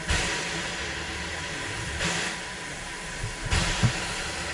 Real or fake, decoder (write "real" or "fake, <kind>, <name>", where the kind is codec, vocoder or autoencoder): real